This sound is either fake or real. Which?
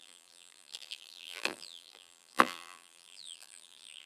fake